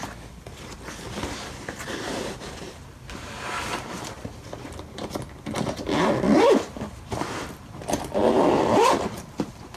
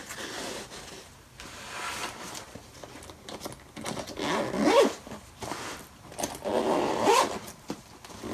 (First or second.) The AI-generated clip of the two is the first